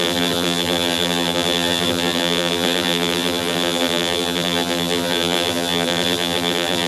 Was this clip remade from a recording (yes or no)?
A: yes